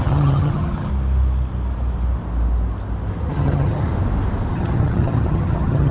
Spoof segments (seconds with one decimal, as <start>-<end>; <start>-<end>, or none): 0.0-0.9; 3.3-3.9; 4.5-5.9